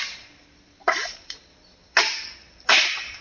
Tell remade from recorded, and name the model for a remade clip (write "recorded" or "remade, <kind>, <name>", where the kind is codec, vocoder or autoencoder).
recorded